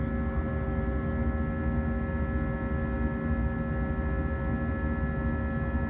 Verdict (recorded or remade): recorded